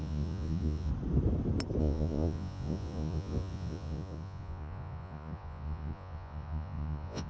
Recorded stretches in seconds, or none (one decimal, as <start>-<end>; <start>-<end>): 0.9-1.8